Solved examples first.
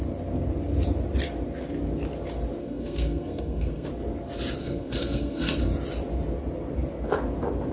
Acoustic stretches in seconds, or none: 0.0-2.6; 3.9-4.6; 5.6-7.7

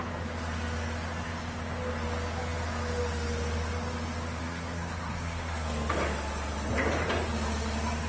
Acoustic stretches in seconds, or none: 0.0-4.4; 5.9-8.1

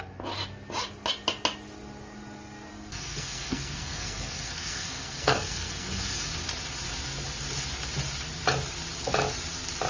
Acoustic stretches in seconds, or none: 0.0-2.7; 6.3-9.9

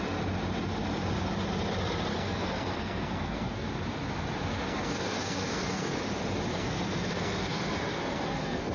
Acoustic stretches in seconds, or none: 0.0-2.1; 3.7-4.5; 5.9-6.5